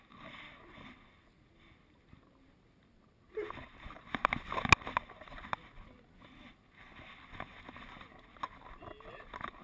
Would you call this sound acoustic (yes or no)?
yes